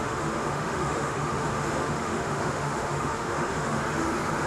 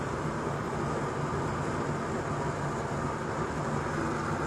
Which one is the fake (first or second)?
first